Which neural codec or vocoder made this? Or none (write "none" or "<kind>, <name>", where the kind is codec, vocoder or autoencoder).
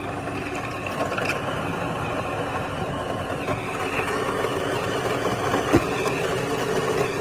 none